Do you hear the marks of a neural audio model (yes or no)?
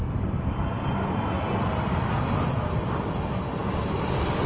no